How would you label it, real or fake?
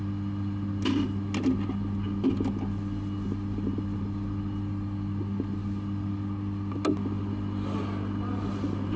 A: real